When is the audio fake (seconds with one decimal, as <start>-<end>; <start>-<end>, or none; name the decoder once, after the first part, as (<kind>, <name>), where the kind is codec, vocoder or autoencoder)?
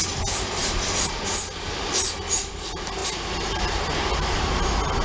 0.6-1.1 (vocoder, BigVGAN v2)